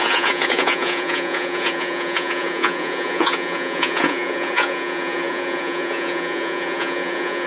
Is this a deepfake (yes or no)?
yes